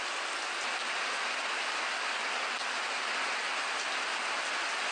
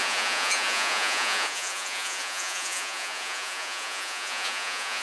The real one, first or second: first